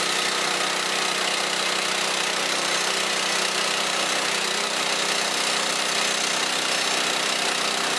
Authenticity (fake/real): real